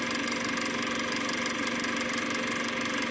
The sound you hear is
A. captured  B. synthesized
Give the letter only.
A